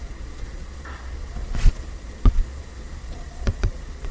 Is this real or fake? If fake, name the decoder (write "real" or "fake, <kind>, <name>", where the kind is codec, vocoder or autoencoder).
fake, vocoder, Vocos